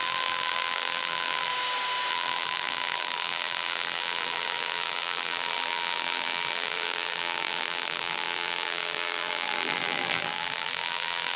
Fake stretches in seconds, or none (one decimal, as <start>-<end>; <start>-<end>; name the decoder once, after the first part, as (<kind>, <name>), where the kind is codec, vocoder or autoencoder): 0.0-1.5 (vocoder, BigVGAN v2); 2.1-11.4